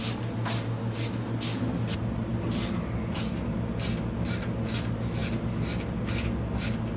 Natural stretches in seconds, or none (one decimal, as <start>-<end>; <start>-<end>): 0.0-7.0

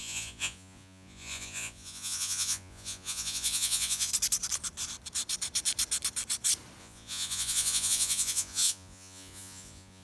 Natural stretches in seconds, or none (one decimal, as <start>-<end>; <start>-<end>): 4.1-6.8

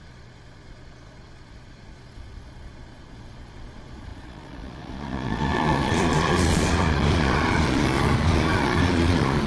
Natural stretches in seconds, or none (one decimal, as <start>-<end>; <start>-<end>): none

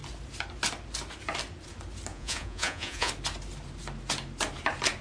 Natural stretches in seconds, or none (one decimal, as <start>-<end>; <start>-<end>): 0.0-2.1; 3.1-5.0

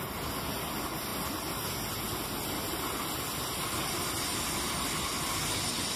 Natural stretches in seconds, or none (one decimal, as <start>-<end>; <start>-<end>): 0.0-6.0